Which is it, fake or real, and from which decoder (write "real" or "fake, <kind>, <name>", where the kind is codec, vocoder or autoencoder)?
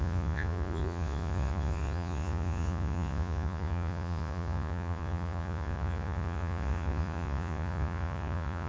fake, vocoder, Vocos